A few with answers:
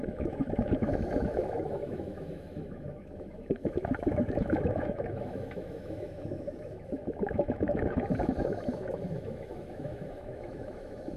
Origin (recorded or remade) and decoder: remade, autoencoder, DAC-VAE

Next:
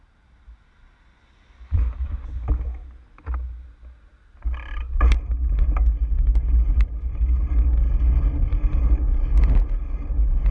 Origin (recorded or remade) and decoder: recorded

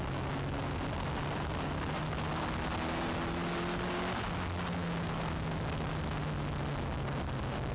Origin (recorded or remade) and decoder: recorded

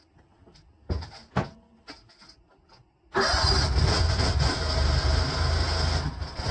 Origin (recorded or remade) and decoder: recorded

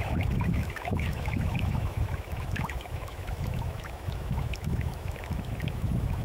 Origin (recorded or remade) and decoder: remade, autoencoder, DAC-VAE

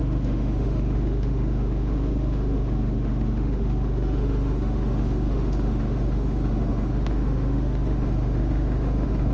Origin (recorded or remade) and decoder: remade, autoencoder, DAC-VAE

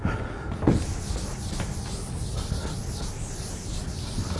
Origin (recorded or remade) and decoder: recorded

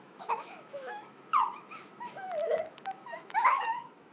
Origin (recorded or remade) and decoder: remade, autoencoder, DAC-VAE